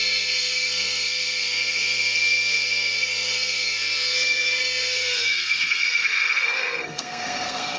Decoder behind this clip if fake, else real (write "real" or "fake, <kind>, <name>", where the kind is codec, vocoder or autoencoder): fake, codec, SNAC